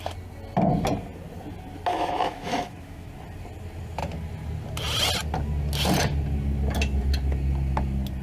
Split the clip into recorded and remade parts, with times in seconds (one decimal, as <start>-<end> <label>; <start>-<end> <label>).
0.0-1.9 recorded; 1.9-3.1 remade; 3.1-8.2 recorded